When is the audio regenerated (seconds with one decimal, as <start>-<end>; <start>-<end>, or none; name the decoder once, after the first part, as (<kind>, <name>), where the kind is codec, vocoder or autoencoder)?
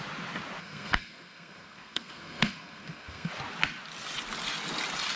0.6-3.3 (codec, SNAC)